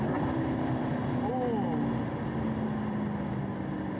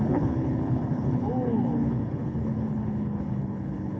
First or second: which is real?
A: first